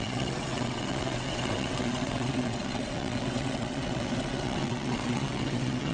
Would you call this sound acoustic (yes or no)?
no